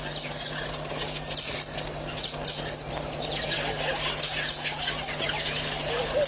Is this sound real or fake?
real